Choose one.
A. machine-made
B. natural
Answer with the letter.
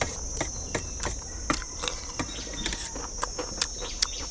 B